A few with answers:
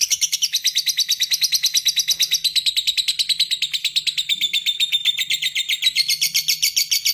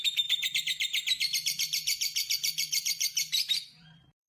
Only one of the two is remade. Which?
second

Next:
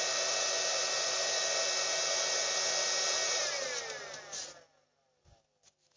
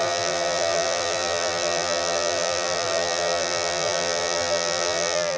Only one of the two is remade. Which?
second